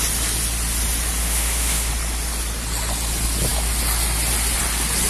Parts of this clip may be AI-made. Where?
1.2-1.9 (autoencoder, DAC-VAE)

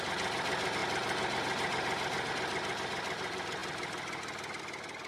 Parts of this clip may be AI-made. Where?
none

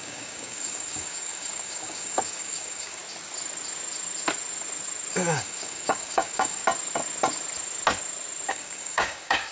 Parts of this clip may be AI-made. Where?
0.0-3.0 (codec, DAC); 5.1-6.6; 8.5-9.5

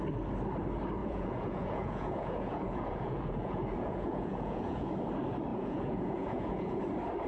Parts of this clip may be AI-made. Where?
1.0-4.9 (vocoder, Vocos); 5.5-6.8

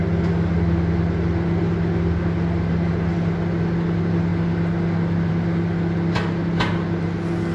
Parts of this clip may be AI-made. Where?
none